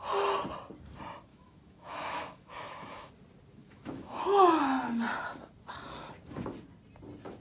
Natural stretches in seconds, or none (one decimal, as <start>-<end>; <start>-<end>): 0.0-1.3; 3.1-3.6; 4.6-7.4